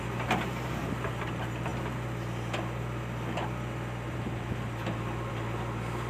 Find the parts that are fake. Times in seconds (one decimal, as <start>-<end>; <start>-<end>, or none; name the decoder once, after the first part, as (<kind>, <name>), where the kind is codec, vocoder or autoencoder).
none